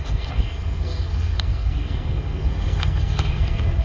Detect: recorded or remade remade